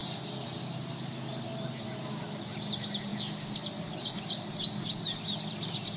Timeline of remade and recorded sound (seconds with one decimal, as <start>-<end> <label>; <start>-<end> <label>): 0.0-6.0 recorded